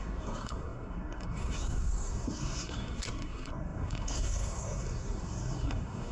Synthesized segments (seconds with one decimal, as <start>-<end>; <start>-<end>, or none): 0.0-6.1